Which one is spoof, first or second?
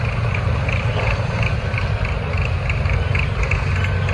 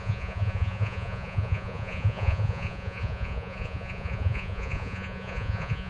second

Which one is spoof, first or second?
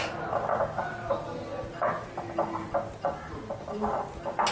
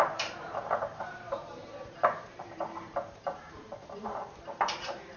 second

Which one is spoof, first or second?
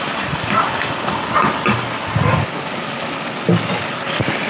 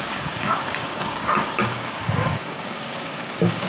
second